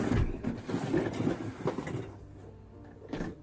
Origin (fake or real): real